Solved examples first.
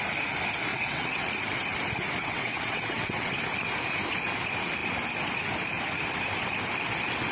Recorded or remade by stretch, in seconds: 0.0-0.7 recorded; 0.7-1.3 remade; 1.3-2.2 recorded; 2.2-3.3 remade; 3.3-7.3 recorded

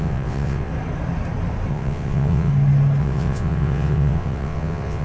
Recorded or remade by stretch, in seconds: 0.0-0.7 remade; 0.7-1.7 recorded; 1.7-2.5 remade; 2.5-3.0 recorded; 3.0-5.0 remade

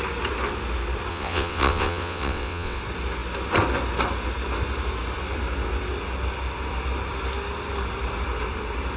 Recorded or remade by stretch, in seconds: 0.0-1.1 recorded; 1.1-2.8 remade; 2.8-9.0 recorded

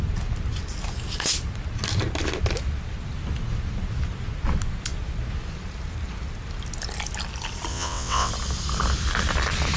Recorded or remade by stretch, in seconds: 0.0-7.7 recorded; 7.7-8.3 remade; 8.3-9.8 recorded

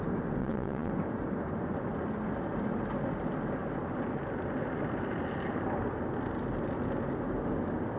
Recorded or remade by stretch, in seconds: 0.0-0.4 recorded; 0.4-0.9 remade; 0.9-8.0 recorded